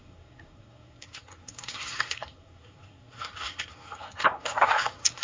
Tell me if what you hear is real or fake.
fake